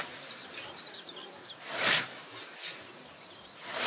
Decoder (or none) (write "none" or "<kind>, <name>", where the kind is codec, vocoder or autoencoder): none